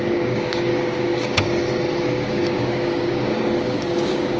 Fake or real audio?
fake